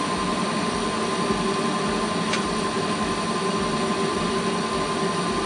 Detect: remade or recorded recorded